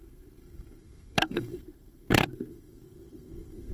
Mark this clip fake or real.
fake